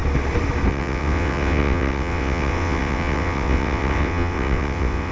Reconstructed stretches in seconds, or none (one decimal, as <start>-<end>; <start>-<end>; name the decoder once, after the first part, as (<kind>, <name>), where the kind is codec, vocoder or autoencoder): 0.7-5.1 (vocoder, WaveNeXt)